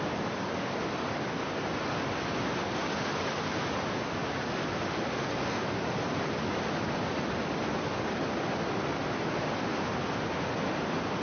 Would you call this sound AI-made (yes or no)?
no